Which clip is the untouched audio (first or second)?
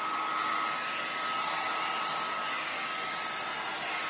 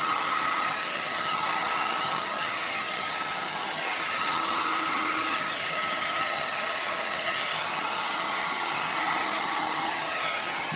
first